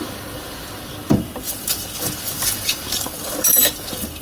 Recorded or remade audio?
recorded